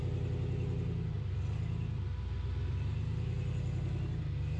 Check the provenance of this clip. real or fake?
real